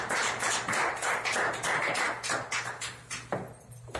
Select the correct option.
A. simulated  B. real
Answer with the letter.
B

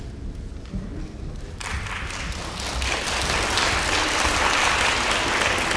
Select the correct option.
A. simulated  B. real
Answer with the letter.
B